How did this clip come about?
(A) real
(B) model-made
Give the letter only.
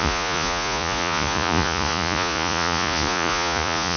B